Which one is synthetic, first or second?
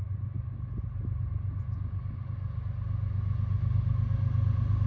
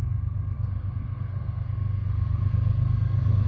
second